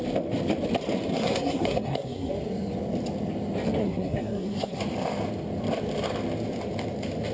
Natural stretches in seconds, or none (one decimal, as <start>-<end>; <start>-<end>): 0.0-1.1; 2.3-3.8; 4.8-7.3